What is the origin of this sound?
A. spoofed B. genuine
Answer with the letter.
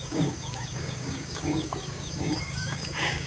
A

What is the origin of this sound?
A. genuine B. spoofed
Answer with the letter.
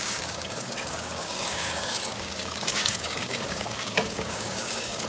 B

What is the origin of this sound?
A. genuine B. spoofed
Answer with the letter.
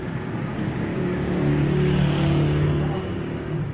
B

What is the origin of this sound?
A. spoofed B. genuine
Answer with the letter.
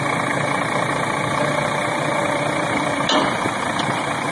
B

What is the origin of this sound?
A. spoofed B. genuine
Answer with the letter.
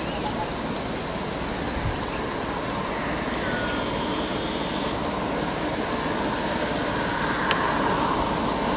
B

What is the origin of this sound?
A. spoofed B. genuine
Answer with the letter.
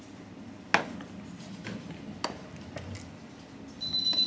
B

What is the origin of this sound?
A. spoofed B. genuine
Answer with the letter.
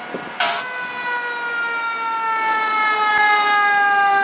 B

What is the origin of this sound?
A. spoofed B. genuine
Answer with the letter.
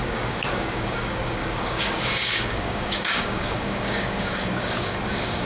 A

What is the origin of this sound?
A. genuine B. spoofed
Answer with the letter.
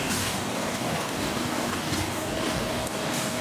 B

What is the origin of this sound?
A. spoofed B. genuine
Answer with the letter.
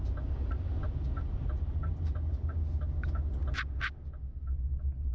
B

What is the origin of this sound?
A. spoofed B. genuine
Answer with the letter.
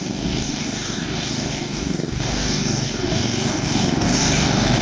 A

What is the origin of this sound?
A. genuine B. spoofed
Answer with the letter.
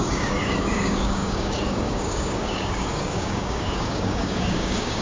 B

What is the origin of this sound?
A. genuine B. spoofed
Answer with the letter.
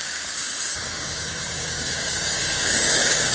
B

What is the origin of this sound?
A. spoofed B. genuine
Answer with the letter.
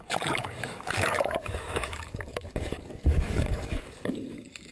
A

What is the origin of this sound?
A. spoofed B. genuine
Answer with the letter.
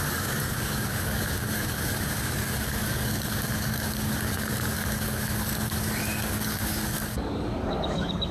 A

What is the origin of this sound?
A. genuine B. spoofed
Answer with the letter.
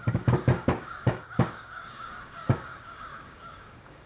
B